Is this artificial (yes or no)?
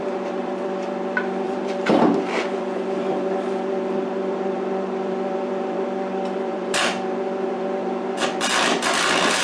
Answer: yes